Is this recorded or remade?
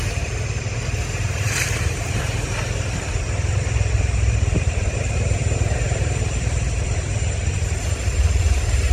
remade